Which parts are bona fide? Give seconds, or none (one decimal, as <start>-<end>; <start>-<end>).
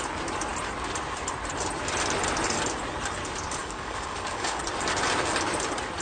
0.0-3.6; 4.6-6.0